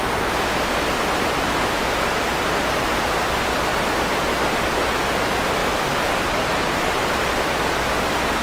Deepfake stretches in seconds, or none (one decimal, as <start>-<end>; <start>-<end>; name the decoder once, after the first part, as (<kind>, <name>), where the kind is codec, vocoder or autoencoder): 5.6-7.2 (vocoder, BigVGAN v2)